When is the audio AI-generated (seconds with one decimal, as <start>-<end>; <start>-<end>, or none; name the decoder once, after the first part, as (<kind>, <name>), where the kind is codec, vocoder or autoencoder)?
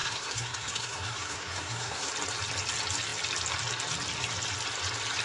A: 0.0-2.1 (codec, SNAC)